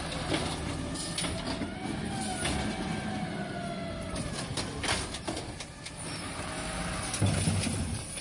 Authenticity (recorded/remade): recorded